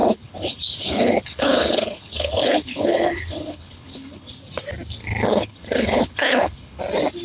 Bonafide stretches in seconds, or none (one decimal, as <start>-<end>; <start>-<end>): 4.3-5.0; 6.8-7.2